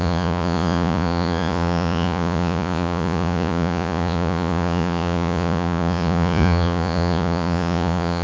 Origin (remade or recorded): remade